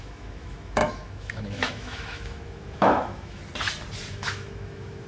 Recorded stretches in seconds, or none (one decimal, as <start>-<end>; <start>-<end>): 3.4-4.1